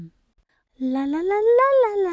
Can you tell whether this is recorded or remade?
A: recorded